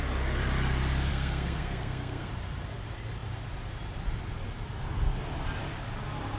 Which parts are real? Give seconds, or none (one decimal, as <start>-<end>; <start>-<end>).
0.0-1.1; 2.3-6.4